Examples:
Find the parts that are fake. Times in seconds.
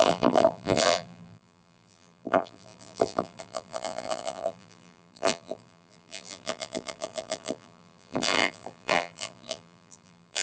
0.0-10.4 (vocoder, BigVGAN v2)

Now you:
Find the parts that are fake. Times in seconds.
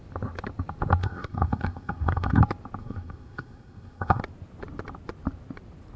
1.0-2.4 (codec, SNAC); 2.8-4.2